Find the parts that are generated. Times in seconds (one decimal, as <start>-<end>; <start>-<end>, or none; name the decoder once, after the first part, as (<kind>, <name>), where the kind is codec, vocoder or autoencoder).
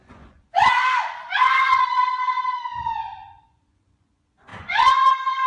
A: 0.0-0.6 (vocoder, Vocos); 1.4-5.5